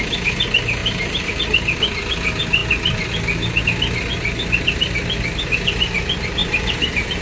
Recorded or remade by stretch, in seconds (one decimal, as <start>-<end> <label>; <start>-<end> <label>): 0.0-0.8 recorded; 0.8-1.3 remade; 1.3-6.4 recorded; 6.4-7.2 remade